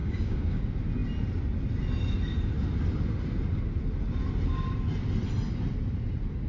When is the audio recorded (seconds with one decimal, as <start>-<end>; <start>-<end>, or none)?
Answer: 0.6-6.5